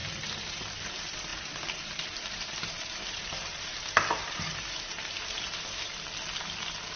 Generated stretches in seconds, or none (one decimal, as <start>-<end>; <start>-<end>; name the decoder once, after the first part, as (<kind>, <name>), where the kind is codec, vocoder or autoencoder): 0.0-5.9 (vocoder, BigVGAN v2)